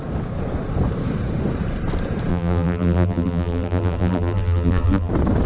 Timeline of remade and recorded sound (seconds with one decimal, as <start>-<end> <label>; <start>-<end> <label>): 0.0-2.3 recorded; 2.3-5.1 remade; 5.1-5.5 recorded